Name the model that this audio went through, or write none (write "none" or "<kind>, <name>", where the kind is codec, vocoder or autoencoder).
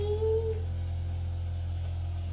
none